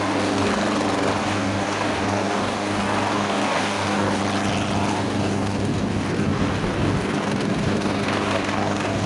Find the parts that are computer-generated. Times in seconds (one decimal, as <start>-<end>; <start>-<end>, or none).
0.0-0.5; 1.2-4.2; 4.9-9.1